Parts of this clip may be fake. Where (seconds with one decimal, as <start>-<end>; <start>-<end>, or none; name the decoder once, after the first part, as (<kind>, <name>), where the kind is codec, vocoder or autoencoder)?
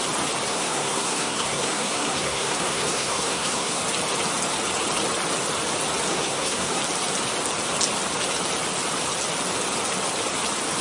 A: 0.5-3.8 (codec, SNAC); 6.1-6.8